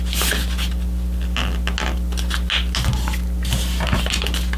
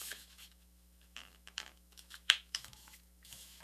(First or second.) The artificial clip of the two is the second